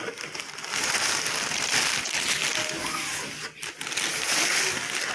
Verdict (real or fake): real